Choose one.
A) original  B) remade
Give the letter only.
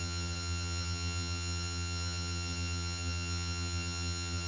B